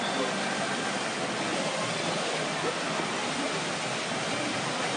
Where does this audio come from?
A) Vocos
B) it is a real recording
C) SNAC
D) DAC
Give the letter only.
B